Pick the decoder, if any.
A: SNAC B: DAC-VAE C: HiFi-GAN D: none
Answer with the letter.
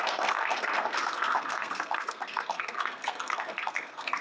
A